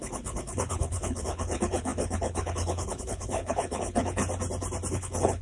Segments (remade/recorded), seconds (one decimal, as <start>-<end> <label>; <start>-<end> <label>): 0.0-4.2 remade; 4.2-4.9 recorded; 4.9-5.4 remade